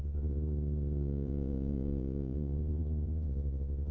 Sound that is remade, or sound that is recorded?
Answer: remade